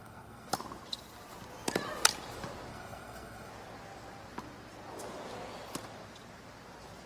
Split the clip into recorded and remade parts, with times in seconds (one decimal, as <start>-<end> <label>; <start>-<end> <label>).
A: 0.0-0.5 remade; 0.5-2.7 recorded; 2.7-3.5 remade; 3.5-7.1 recorded